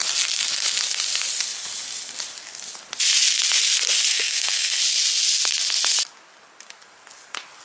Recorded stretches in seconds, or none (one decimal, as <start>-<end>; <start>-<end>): 0.0-4.1; 4.8-7.6